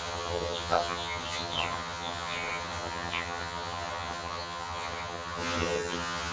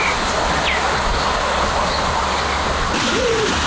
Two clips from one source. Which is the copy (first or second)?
first